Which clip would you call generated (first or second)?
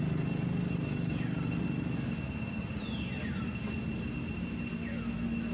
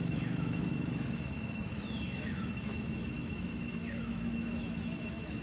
second